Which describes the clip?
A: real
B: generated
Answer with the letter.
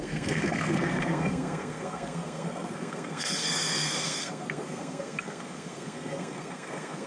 B